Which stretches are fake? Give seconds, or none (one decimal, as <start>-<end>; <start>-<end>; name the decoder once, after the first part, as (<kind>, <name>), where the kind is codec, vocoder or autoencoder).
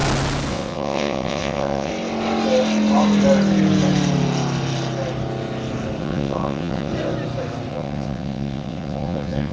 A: 0.5-1.9 (vocoder, WaveNeXt); 6.0-6.9; 7.7-9.5